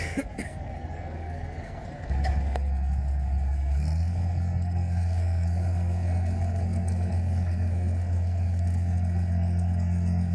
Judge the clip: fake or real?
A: fake